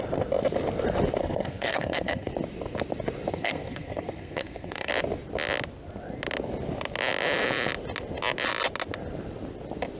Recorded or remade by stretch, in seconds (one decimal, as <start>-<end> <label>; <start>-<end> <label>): 0.0-1.2 recorded; 1.2-2.3 remade; 2.3-3.3 recorded; 3.3-4.9 remade; 4.9-10.0 recorded

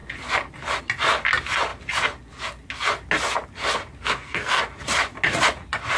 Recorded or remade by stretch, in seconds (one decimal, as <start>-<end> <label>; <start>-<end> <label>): 0.0-4.0 recorded; 4.0-4.6 remade; 4.6-6.0 recorded

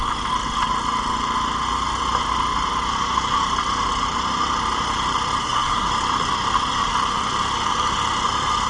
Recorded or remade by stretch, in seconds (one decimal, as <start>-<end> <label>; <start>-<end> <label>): 0.0-5.4 recorded; 5.4-5.9 remade; 5.9-8.7 recorded

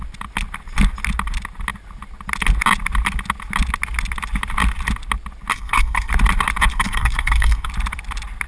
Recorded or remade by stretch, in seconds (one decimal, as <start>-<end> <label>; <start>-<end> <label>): 0.0-5.5 recorded; 5.5-6.1 remade; 6.1-6.7 recorded; 6.7-7.7 remade; 7.7-8.5 recorded